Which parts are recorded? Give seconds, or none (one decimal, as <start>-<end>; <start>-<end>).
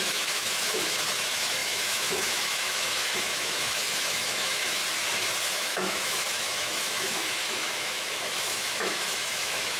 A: 4.8-5.5